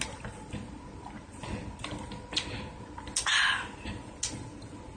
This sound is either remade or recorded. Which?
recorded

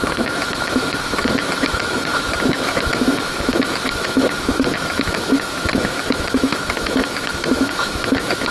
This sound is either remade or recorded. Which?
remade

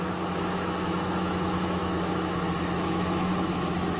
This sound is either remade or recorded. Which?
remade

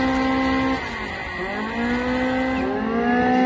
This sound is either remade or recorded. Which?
recorded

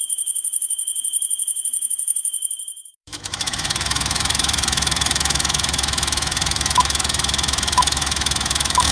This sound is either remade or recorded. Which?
remade